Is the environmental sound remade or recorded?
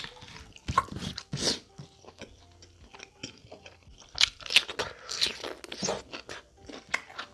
recorded